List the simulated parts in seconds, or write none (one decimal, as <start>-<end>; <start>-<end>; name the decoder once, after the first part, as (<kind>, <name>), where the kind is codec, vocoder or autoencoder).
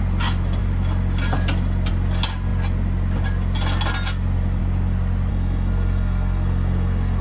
5.3-7.2 (codec, SNAC)